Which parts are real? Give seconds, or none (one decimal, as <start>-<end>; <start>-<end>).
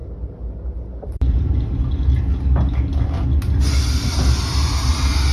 1.9-5.3